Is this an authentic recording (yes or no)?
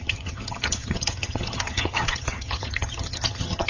no